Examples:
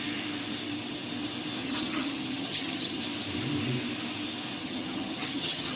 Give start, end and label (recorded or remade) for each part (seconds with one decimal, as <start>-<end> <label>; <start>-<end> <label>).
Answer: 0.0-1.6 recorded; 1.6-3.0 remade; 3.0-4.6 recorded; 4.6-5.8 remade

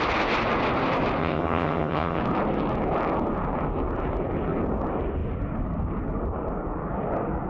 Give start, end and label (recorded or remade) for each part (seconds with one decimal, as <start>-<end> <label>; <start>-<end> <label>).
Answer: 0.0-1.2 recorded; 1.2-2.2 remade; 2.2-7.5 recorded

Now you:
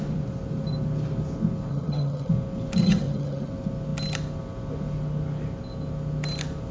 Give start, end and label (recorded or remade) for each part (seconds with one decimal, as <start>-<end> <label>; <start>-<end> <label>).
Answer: 0.0-1.7 recorded; 1.7-2.3 remade; 2.3-2.8 recorded; 2.8-3.5 remade; 3.5-6.7 recorded

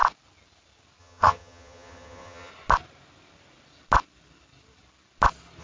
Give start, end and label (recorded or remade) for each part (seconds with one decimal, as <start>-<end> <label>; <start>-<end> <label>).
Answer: 0.0-1.0 recorded; 1.0-2.5 remade; 2.5-5.6 recorded